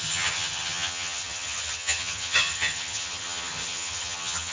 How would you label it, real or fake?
fake